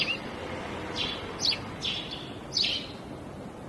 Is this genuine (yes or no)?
yes